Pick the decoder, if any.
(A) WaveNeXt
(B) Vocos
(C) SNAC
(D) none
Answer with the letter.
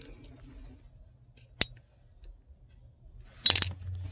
D